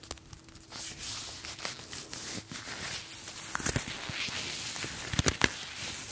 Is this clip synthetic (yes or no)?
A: no